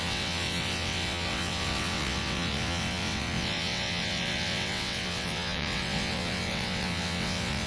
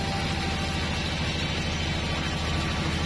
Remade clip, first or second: first